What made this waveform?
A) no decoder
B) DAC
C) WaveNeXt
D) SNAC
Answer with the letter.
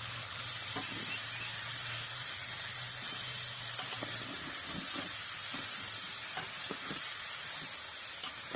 A